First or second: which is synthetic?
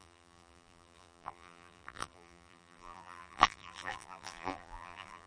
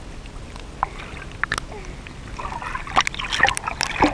first